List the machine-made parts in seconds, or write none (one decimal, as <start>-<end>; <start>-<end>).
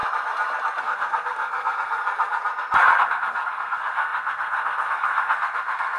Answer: 0.8-2.0; 3.0-6.0